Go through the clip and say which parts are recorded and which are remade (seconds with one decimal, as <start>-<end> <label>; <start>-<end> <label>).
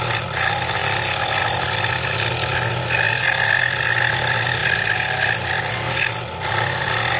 0.0-0.8 recorded; 0.8-1.4 remade; 1.4-2.5 recorded; 2.5-3.2 remade; 3.2-4.6 recorded; 4.6-5.7 remade; 5.7-7.2 recorded